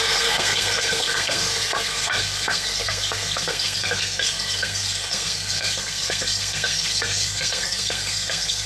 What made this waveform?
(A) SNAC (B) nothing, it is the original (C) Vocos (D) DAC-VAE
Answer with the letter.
A